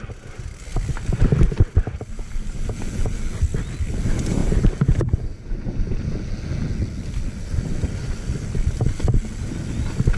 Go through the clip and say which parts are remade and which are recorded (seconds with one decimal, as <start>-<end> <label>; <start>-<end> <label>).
0.0-10.2 recorded